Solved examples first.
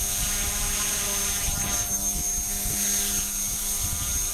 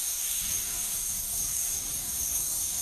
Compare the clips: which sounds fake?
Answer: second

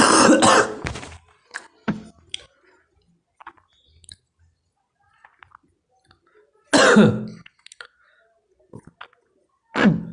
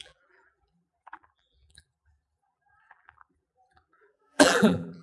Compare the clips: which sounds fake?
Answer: second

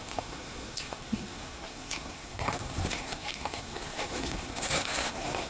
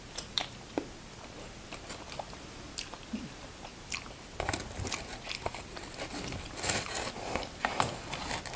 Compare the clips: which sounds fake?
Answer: first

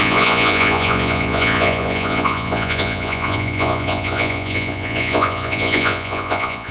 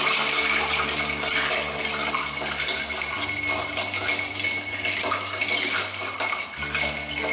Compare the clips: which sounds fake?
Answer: first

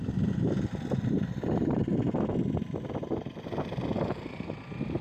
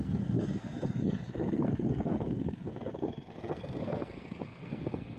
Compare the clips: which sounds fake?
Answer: second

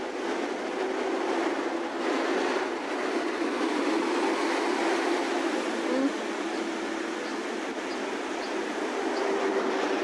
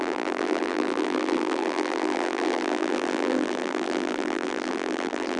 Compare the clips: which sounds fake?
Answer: second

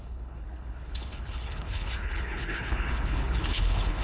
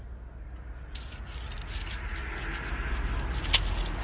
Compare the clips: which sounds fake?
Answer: first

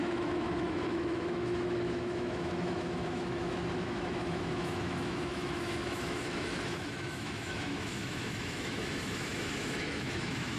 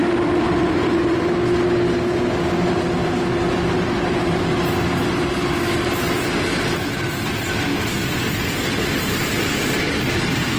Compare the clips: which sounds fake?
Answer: first